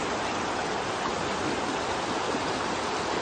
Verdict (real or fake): real